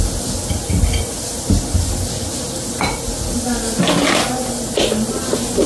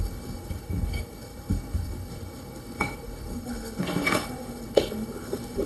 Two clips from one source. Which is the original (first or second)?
first